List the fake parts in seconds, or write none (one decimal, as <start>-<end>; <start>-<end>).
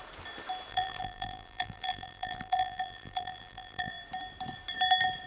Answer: 0.7-3.9